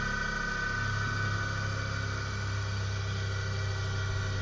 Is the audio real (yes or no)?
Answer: yes